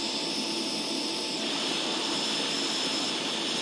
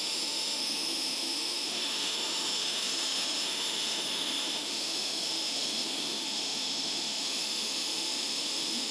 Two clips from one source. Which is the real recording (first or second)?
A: first